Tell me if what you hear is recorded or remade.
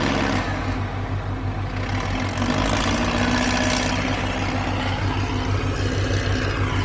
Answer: recorded